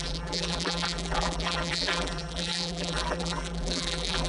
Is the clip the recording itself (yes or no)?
no